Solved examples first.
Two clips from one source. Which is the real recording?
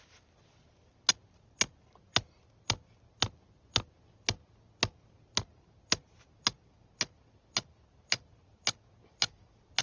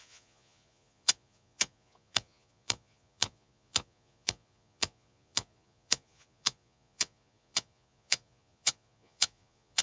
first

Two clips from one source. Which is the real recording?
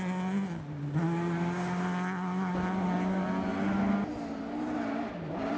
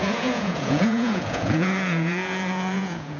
first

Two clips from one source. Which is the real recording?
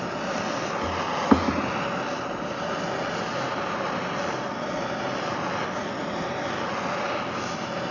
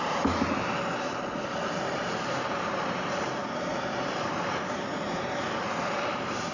first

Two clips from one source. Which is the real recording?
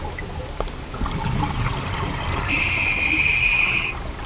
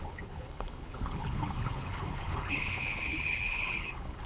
first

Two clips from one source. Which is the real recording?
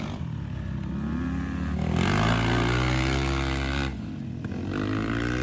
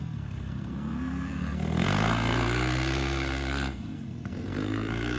first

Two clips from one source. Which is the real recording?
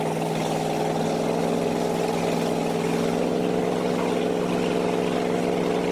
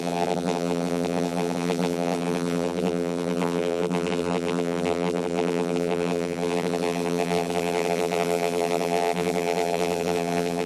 first